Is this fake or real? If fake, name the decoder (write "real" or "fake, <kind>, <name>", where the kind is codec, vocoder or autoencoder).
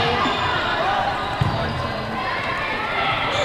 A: fake, vocoder, BigVGAN v2